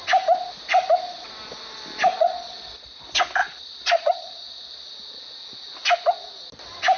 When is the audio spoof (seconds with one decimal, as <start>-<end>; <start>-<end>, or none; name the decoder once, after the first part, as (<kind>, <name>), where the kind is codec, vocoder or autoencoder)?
2.1-3.0 (vocoder, Vocos); 3.4-4.9